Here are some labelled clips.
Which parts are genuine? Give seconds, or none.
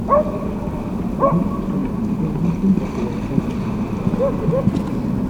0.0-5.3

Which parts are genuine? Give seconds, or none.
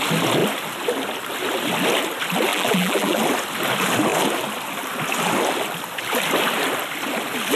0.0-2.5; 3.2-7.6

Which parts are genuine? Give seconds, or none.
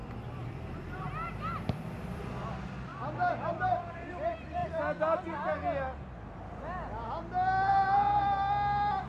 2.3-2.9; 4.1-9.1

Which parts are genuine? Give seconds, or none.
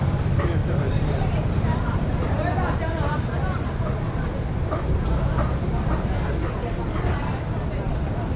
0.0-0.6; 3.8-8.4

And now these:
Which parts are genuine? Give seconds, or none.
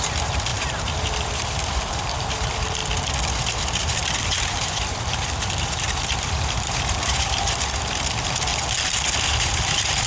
2.8-3.3; 8.5-9.4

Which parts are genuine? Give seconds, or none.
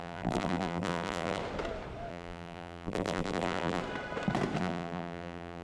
1.4-2.1; 3.8-4.6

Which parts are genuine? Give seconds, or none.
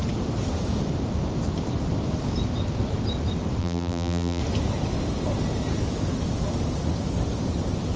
0.0-3.6; 4.4-8.0